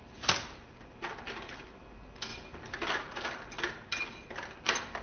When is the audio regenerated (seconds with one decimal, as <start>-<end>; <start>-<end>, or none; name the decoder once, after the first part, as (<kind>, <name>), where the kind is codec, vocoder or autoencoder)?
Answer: none